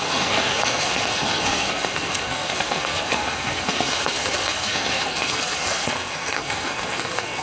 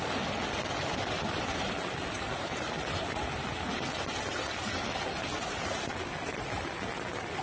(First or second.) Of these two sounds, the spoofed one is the first